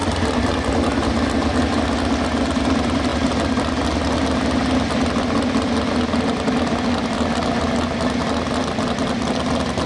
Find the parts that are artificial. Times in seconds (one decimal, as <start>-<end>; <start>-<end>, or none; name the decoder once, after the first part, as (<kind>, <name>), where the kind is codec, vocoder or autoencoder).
none

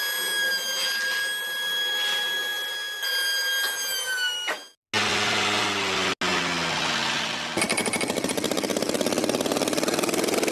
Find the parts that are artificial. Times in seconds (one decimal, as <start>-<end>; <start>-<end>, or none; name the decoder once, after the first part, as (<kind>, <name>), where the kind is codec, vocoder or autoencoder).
none

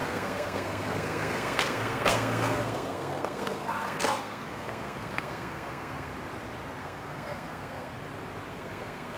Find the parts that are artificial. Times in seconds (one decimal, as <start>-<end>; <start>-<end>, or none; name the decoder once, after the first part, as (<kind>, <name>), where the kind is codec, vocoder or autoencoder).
0.0-6.1 (codec, SNAC); 6.8-7.9; 8.5-9.2

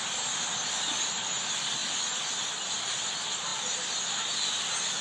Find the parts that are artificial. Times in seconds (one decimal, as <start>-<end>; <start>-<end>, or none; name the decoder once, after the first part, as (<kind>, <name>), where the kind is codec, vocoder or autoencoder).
none

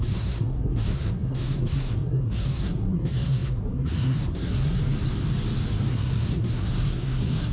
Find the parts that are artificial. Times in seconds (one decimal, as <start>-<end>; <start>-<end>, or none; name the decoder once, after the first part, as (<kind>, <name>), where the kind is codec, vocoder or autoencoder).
0.0-4.8 (codec, SNAC); 5.9-7.5